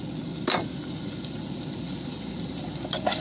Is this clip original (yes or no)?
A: no